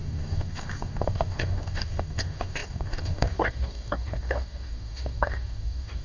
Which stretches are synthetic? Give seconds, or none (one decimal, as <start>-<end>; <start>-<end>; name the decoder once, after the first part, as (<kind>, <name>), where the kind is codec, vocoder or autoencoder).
0.0-6.0 (codec, DAC)